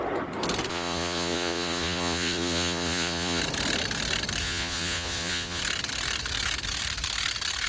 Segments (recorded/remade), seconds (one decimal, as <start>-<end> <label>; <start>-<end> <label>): 0.0-0.7 recorded; 0.7-3.4 remade; 3.4-4.4 recorded; 4.4-5.6 remade; 5.6-7.7 recorded